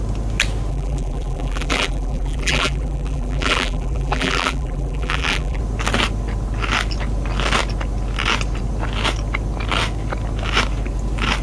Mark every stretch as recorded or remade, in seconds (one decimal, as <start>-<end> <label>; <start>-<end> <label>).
0.0-0.7 recorded; 0.7-5.6 remade; 5.6-11.4 recorded